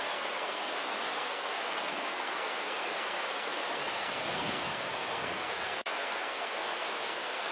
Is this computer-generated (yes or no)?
yes